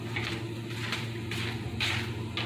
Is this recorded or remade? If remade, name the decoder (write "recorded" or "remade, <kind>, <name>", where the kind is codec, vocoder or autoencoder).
recorded